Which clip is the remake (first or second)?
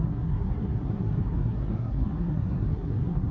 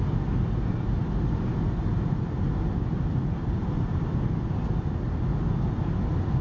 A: first